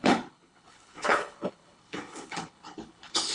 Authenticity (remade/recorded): remade